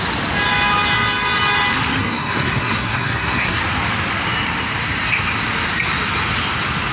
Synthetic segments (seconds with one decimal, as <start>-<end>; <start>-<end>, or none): 2.0-3.6

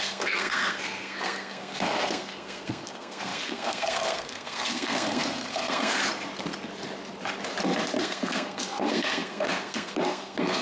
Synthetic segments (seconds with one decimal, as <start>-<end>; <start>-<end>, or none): 0.0-6.0; 8.0-10.6

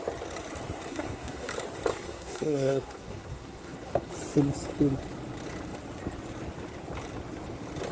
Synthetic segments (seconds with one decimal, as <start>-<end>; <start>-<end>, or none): 0.9-1.5; 1.9-4.1